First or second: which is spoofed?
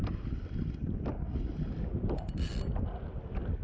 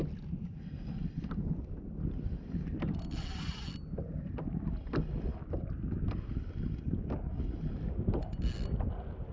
first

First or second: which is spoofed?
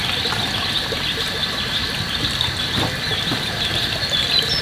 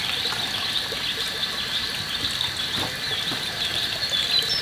first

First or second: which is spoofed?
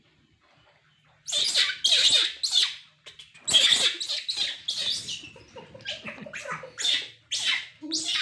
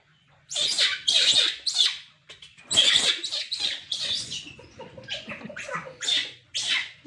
second